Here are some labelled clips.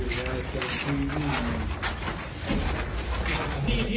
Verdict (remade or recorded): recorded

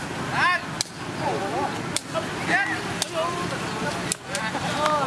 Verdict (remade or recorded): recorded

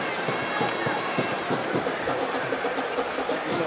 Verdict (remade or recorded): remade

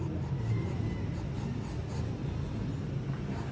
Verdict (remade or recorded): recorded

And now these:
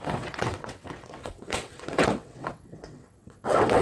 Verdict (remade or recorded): remade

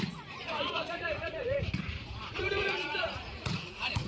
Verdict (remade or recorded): remade